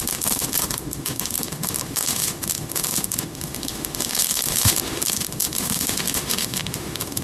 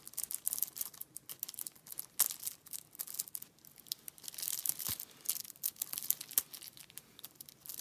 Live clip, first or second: second